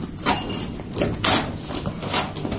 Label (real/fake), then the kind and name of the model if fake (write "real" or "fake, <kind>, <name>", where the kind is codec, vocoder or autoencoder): real